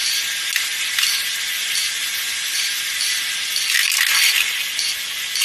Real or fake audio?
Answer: real